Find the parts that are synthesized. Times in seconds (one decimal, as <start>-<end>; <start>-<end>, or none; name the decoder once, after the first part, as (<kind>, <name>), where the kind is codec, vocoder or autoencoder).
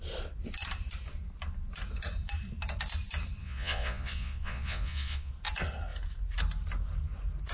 3.4-5.3 (vocoder, Vocos)